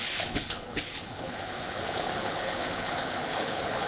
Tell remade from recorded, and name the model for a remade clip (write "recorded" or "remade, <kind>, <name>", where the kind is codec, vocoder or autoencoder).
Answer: remade, codec, HILCodec